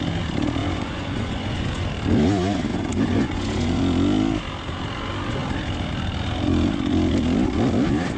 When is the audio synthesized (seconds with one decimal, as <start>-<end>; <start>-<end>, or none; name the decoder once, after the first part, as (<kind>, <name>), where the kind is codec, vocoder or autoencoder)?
0.6-1.9 (vocoder, Vocos); 2.7-3.8